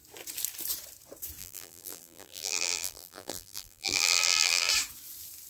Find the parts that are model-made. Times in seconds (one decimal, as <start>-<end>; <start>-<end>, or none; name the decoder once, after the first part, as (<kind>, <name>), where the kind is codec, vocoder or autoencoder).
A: 1.4-4.7 (vocoder, BigVGAN v2)